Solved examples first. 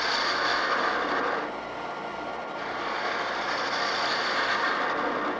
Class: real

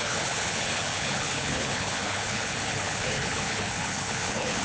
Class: fake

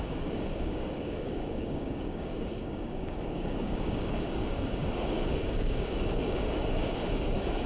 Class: fake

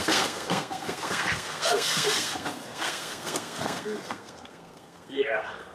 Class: fake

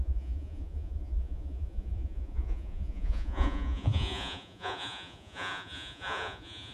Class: fake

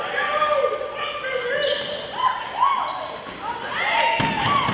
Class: real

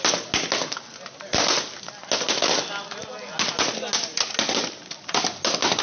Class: real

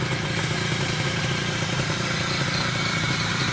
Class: fake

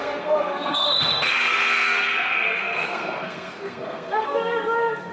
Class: fake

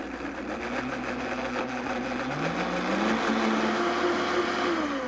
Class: real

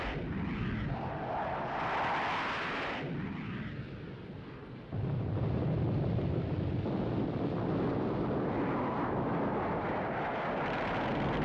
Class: real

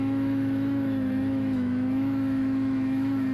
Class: fake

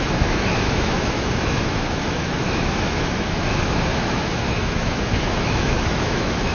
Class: fake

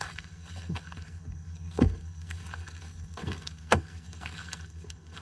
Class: fake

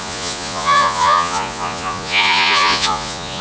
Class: fake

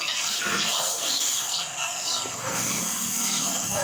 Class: fake